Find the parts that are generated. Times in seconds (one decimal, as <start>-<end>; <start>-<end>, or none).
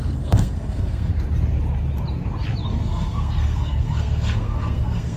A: 0.0-1.1; 2.7-5.2